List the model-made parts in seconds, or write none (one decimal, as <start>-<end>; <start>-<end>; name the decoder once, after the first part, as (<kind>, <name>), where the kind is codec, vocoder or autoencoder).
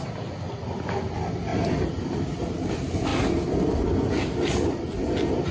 1.5-2.2 (vocoder, BigVGAN v2)